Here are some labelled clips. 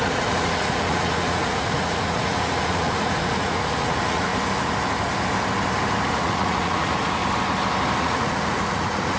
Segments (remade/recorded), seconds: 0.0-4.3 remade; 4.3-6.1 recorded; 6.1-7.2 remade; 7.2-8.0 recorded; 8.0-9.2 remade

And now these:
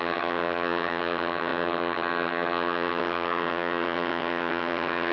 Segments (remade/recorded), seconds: 0.0-5.1 remade